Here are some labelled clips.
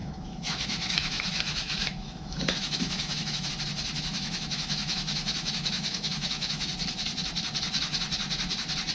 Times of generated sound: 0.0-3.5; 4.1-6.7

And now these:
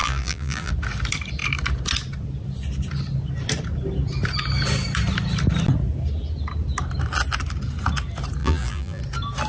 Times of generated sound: 0.0-0.7; 8.4-9.0

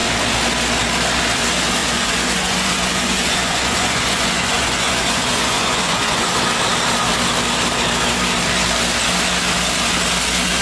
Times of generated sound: 1.8-6.3

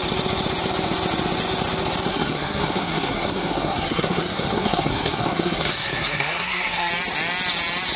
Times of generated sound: 2.1-6.9

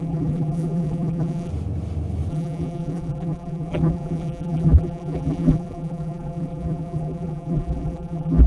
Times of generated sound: 0.0-1.5; 2.3-8.5

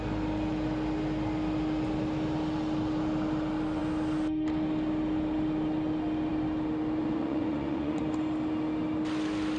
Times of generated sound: 7.0-8.0

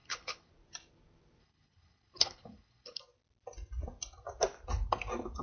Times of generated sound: 0.0-0.5; 1.4-3.0

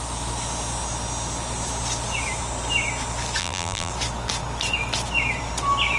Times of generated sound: 3.4-3.9